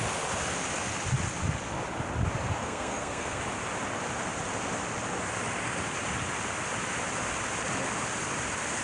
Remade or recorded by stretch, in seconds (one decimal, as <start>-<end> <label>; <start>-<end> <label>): 0.0-2.6 recorded; 2.6-3.4 remade; 3.4-8.8 recorded

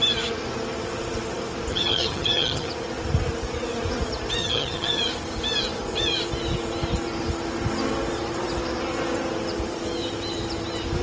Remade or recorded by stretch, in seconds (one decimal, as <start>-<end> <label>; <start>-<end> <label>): 0.0-1.7 recorded; 1.7-2.7 remade; 2.7-4.4 recorded; 4.4-5.0 remade; 5.0-11.0 recorded

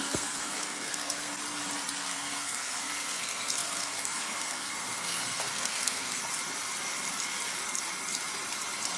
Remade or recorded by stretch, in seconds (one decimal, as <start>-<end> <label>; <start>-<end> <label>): 0.0-1.3 remade; 1.3-2.0 recorded; 2.0-6.2 remade; 6.2-9.0 recorded

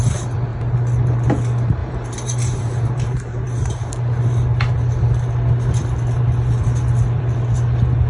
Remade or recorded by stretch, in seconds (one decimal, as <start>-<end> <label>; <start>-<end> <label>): 0.0-1.8 recorded; 1.8-3.7 remade; 3.7-8.1 recorded

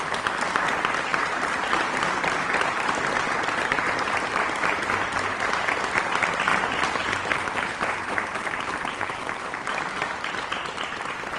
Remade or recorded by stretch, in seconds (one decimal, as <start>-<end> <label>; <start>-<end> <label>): 0.0-1.1 recorded; 1.1-4.8 remade; 4.8-6.5 recorded; 6.5-9.4 remade; 9.4-11.4 recorded

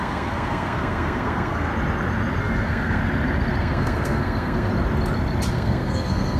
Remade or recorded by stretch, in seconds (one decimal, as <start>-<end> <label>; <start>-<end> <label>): 0.0-1.7 remade; 1.7-2.4 recorded; 2.4-3.0 remade; 3.0-3.6 recorded; 3.6-4.7 remade; 4.7-5.5 recorded; 5.5-6.4 remade

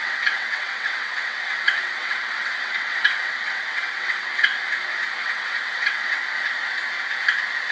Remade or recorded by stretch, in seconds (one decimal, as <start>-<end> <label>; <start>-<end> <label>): 0.0-4.5 remade; 4.5-5.2 recorded; 5.2-6.2 remade; 6.2-7.7 recorded

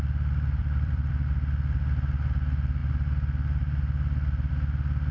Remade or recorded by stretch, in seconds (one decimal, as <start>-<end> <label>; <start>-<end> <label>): 0.0-0.6 recorded; 0.6-1.1 remade; 1.1-5.1 recorded